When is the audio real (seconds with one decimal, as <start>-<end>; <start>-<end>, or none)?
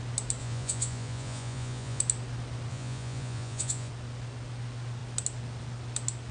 0.0-0.4; 2.0-2.7; 3.9-6.3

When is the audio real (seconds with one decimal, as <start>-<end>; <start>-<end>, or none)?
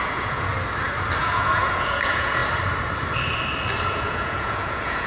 0.5-1.2; 2.4-3.9